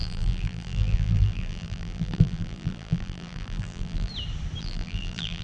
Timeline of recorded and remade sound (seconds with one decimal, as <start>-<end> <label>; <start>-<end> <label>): 0.0-4.1 remade; 4.1-4.6 recorded; 4.6-5.4 remade